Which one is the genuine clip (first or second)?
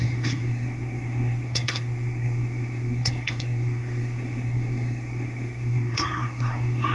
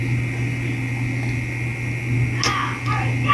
second